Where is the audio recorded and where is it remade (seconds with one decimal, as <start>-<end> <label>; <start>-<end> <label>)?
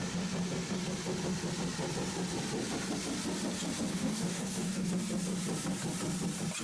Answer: 0.0-3.9 recorded; 3.9-4.9 remade; 4.9-6.6 recorded